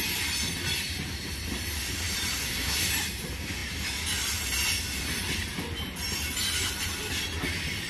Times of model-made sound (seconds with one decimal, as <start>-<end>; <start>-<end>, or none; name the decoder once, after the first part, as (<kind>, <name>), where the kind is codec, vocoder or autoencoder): 2.4-2.9 (codec, SNAC)